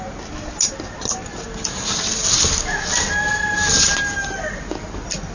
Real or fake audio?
real